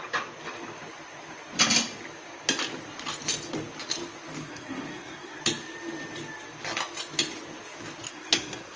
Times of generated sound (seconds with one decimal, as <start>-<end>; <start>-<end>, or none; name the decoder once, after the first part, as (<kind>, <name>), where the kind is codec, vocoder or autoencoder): 4.4-5.4 (codec, SNAC); 8.1-8.8